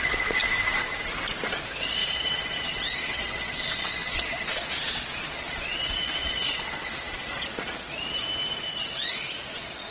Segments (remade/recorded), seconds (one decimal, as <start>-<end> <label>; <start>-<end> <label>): 0.0-0.4 remade; 0.4-1.5 recorded; 1.5-8.2 remade; 8.2-8.9 recorded; 8.9-9.9 remade